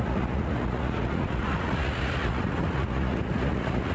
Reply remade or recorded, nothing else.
remade